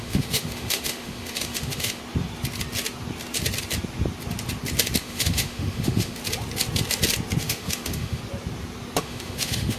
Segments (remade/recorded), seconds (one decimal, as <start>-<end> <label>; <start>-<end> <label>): 0.0-2.0 remade; 2.0-5.0 recorded; 5.0-6.2 remade; 6.2-7.4 recorded; 7.4-8.2 remade; 8.2-9.0 recorded; 9.0-9.8 remade